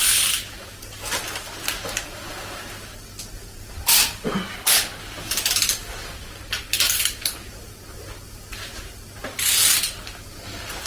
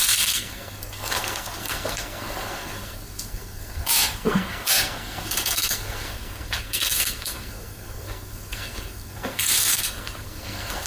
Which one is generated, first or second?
second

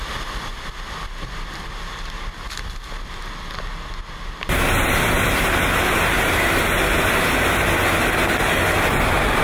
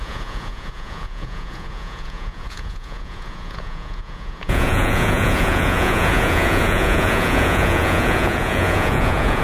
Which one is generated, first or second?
second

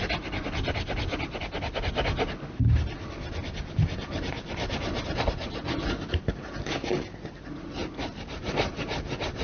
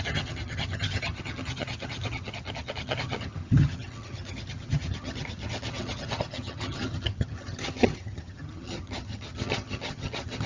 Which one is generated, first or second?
second